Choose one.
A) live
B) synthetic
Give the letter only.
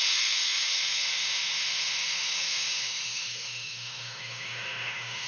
B